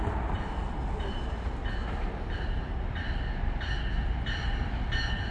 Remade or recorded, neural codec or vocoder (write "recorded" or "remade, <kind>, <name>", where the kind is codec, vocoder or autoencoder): recorded